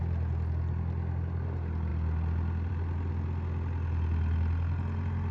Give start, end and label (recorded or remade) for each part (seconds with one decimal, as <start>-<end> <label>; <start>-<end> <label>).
0.0-5.3 recorded